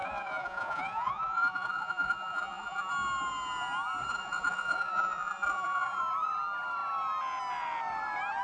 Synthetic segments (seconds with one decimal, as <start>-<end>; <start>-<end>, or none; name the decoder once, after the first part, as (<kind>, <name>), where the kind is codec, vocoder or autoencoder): 0.0-2.9 (vocoder, Vocos); 4.1-6.0